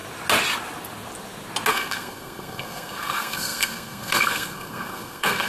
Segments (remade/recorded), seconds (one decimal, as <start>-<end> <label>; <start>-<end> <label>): 0.0-1.7 recorded; 1.7-5.5 remade